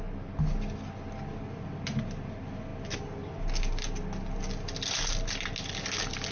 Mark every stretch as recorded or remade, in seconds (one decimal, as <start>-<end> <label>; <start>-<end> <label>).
0.0-6.3 recorded